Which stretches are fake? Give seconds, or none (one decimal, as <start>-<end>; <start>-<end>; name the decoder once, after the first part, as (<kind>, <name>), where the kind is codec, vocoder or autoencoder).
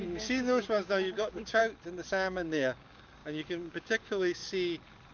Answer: 0.0-1.6 (codec, DAC); 2.1-4.4